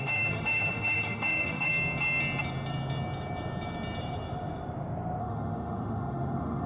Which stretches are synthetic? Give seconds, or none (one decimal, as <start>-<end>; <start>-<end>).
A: 0.0-1.7; 5.2-6.7